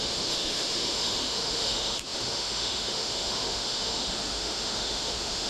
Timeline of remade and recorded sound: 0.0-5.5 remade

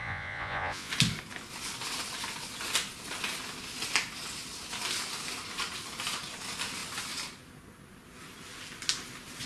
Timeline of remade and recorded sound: 0.0-0.9 remade; 0.9-9.5 recorded